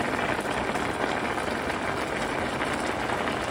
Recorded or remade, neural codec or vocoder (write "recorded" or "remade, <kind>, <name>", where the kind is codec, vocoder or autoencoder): recorded